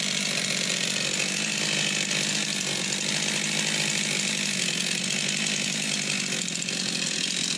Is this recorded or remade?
recorded